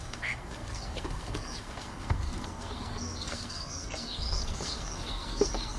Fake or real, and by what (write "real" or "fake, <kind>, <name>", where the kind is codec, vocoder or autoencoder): fake, codec, SNAC